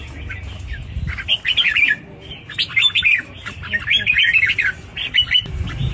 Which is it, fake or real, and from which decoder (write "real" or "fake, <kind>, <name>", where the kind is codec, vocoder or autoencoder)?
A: real